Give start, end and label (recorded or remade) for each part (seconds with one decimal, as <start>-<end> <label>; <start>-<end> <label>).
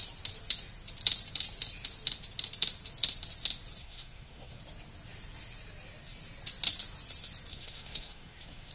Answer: 0.0-3.8 recorded; 3.8-4.6 remade; 4.6-7.5 recorded; 7.5-8.7 remade